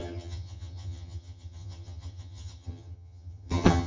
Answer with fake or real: fake